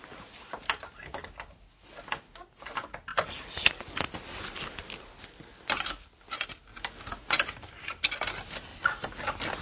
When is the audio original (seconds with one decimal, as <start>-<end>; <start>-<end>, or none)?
0.0-8.7; 9.2-9.6